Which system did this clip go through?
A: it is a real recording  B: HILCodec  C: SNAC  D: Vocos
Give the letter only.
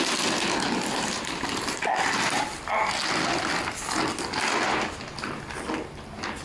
A